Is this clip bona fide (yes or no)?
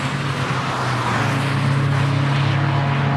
yes